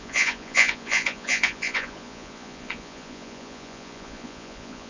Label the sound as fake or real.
fake